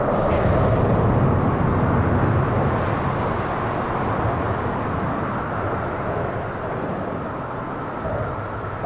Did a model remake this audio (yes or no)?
no